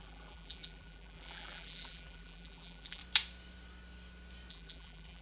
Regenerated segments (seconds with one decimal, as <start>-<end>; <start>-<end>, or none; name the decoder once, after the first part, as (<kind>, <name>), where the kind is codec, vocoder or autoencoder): 0.0-3.0 (vocoder, BigVGAN v2); 4.5-5.2